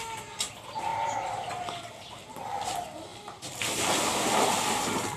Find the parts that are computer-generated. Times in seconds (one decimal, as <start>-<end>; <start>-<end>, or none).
0.9-1.7; 3.1-3.8